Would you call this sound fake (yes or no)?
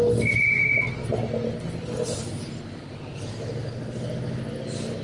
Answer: no